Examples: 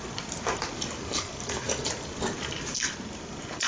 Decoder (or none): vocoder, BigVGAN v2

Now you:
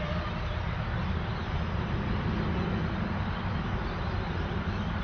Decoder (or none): none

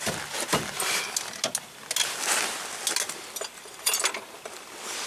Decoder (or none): none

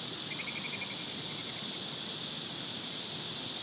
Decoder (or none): vocoder, BigVGAN v2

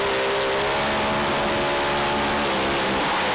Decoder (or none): none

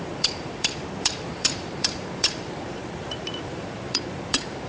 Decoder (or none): vocoder, BigVGAN v2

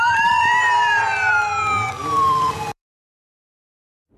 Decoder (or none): vocoder, BigVGAN v2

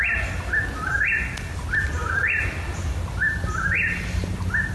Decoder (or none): none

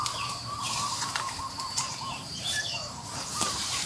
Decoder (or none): vocoder, BigVGAN v2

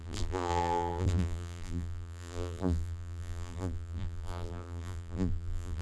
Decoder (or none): vocoder, BigVGAN v2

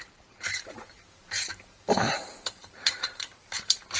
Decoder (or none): vocoder, BigVGAN v2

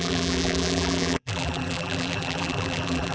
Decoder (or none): vocoder, BigVGAN v2